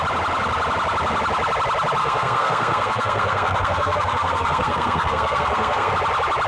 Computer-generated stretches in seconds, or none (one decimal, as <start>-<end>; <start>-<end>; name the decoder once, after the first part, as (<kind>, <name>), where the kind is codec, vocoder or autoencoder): 2.0-5.9 (codec, SNAC)